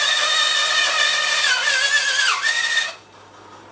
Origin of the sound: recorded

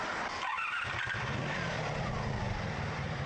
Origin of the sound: recorded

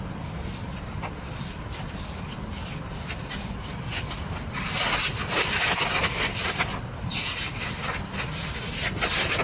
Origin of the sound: recorded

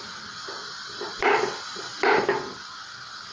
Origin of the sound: recorded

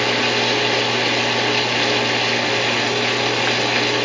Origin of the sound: recorded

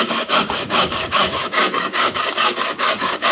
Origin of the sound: remade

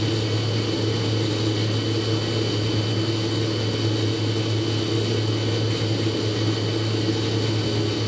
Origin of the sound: recorded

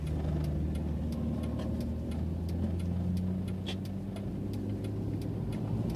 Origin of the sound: recorded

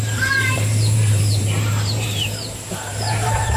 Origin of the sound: remade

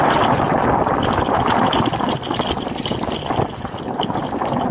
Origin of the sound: recorded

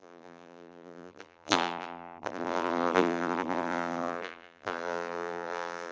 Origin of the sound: remade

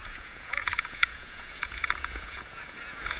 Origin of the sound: remade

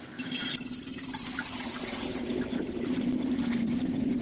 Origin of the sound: remade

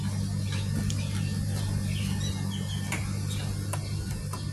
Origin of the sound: recorded